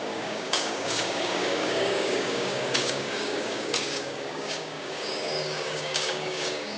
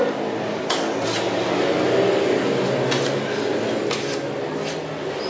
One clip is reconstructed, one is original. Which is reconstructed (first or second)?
first